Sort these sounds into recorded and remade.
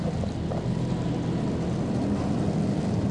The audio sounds recorded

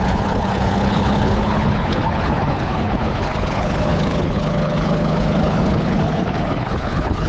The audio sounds remade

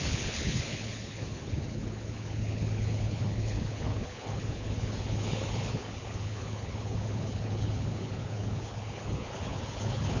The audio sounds remade